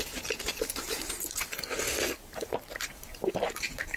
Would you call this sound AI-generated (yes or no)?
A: yes